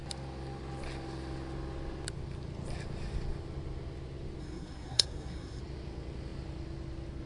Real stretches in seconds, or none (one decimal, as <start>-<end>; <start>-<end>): 0.0-4.4; 5.6-7.3

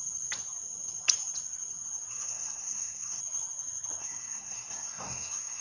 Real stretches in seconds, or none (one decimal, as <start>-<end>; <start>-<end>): 0.0-2.1; 3.2-4.0